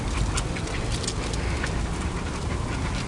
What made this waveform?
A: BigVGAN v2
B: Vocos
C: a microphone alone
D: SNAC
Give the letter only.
C